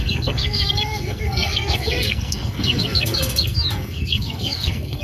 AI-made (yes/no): yes